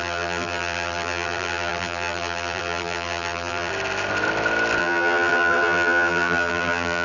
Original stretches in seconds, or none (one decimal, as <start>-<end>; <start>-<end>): 3.7-4.8